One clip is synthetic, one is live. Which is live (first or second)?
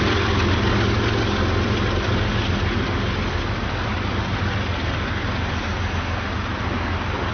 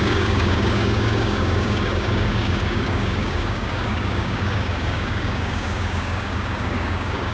first